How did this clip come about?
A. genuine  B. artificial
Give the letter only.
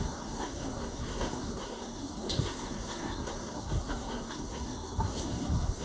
B